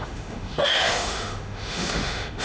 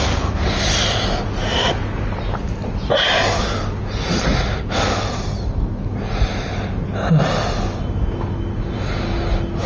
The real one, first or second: second